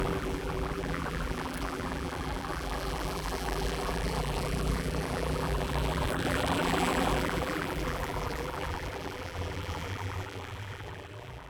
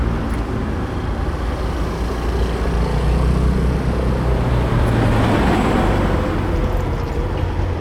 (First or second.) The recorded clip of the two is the second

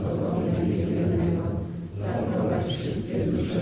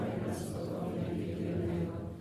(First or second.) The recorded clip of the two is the second